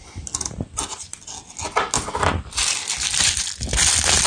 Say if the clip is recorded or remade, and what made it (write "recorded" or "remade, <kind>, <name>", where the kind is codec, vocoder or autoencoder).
recorded